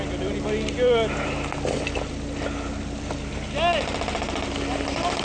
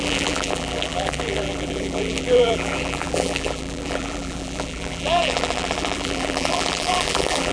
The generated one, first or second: second